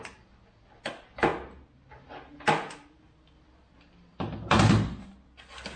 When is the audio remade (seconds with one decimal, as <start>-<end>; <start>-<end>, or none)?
none